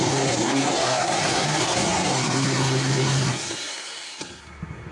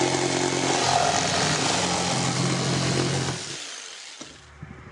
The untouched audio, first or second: second